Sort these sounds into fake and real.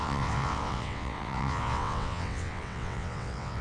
fake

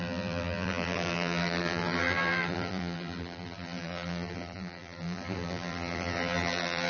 fake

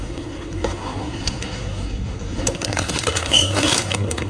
fake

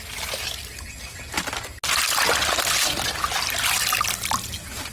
real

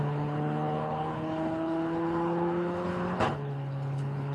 fake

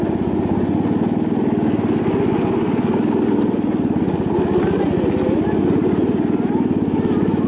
real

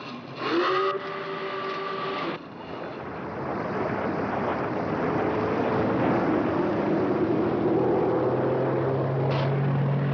real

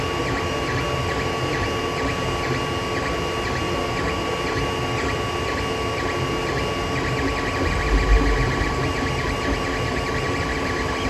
real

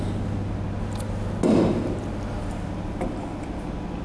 real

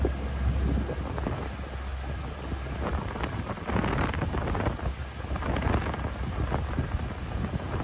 real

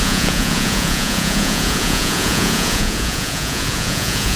fake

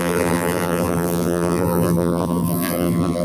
fake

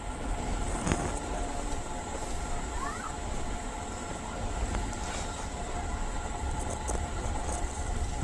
real